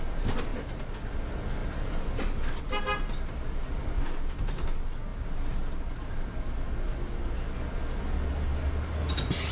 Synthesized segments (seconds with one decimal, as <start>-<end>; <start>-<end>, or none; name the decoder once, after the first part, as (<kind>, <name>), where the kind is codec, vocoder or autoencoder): none